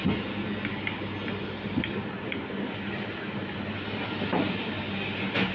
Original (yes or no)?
yes